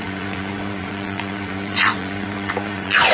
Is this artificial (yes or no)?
yes